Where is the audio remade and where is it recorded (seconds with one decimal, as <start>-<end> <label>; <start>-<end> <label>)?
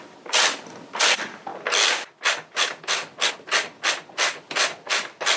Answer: 0.0-5.4 recorded